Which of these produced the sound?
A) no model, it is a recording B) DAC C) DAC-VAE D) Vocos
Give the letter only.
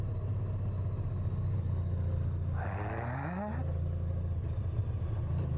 A